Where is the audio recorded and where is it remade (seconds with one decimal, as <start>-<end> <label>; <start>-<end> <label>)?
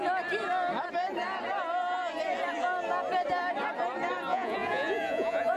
0.0-4.3 recorded; 4.3-5.6 remade